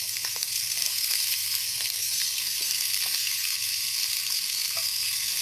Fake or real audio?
fake